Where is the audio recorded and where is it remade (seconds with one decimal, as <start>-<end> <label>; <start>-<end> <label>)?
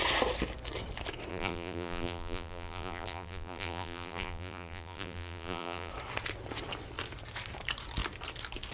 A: 0.0-1.3 recorded; 1.3-5.9 remade; 5.9-8.7 recorded